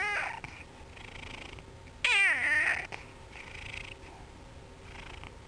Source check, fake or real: real